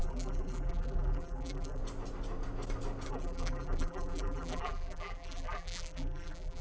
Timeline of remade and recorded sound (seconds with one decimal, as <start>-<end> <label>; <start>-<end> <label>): 0.0-1.8 remade; 1.8-3.1 recorded; 3.1-6.6 remade